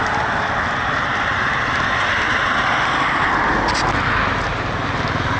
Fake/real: real